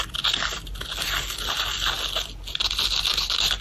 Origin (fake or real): real